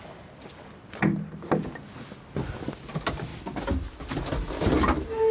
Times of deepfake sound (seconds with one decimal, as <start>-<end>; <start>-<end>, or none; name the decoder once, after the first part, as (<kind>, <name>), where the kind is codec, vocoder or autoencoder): none